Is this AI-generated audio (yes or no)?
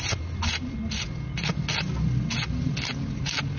no